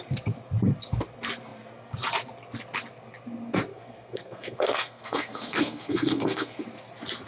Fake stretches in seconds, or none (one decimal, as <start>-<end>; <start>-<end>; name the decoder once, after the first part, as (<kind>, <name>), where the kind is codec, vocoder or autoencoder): 3.7-6.6 (codec, SNAC)